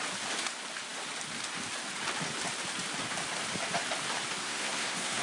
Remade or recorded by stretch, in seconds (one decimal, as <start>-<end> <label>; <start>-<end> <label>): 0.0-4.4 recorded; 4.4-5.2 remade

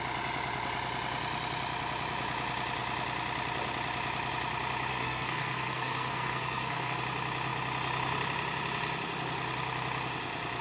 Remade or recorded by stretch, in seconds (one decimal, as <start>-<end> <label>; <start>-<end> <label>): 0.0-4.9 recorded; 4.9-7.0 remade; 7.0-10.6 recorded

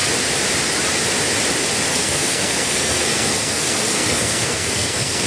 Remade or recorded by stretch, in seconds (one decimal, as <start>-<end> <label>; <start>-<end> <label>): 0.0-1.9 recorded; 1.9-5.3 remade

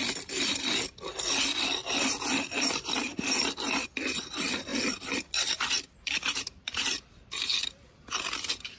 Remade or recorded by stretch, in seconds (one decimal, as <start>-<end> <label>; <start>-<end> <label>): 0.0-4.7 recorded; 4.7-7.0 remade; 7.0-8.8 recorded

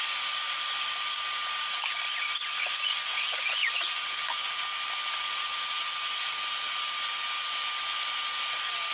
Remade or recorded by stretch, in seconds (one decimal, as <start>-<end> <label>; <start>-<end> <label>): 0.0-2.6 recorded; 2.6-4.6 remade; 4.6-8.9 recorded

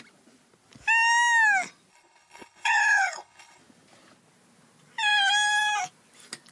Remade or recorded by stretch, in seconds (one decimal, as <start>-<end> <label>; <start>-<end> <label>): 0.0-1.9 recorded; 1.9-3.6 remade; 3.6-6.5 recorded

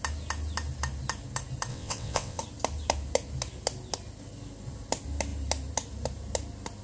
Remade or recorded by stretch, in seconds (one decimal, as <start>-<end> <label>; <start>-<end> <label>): 0.0-1.7 recorded; 1.7-2.4 remade; 2.4-6.8 recorded

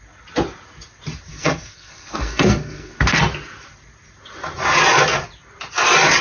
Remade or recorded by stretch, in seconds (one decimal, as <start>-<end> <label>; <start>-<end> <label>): 0.0-1.3 recorded; 1.3-3.2 remade; 3.2-6.2 recorded